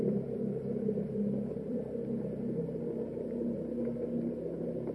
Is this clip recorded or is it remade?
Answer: remade